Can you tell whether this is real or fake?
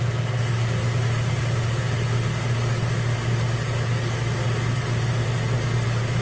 real